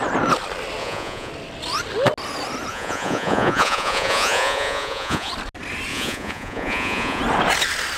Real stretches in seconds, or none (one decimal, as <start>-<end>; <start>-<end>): 0.0-0.8; 1.3-2.7; 5.3-5.9; 7.2-8.0